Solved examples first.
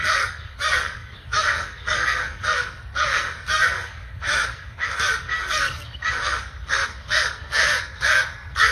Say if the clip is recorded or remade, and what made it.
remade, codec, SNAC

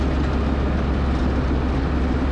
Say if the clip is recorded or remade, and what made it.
recorded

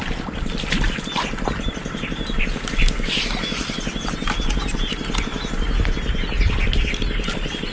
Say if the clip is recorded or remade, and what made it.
recorded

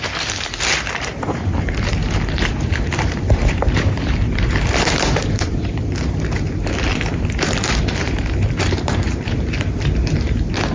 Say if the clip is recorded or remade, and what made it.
remade, vocoder, BigVGAN v2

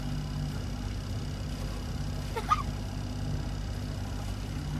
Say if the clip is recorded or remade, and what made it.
recorded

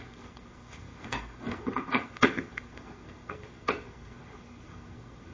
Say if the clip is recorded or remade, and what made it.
remade, codec, SNAC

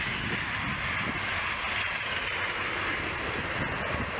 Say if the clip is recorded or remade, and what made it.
recorded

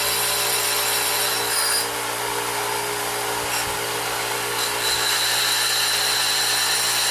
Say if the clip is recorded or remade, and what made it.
recorded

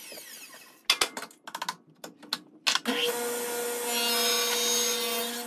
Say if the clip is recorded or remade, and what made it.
recorded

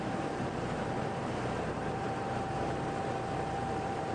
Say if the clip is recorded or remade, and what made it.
remade, vocoder, BigVGAN v2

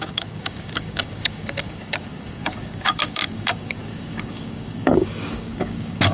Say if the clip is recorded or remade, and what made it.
remade, codec, DAC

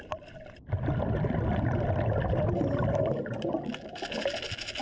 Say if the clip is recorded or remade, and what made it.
recorded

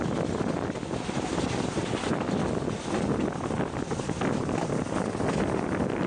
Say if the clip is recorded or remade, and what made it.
recorded